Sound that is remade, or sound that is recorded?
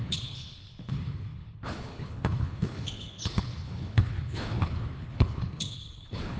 remade